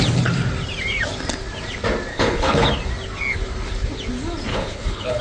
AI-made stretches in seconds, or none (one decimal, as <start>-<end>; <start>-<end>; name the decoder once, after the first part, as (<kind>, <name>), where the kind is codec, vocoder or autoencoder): 2.1-2.7 (codec, HILCodec); 4.5-5.2